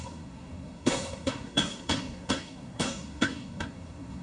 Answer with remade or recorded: remade